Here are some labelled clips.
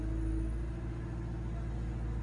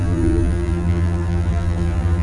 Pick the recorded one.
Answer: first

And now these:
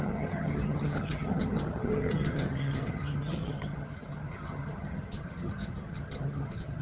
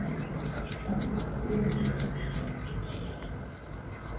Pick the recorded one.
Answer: second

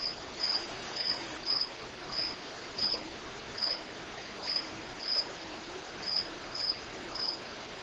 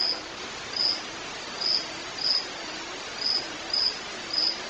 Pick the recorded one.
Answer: second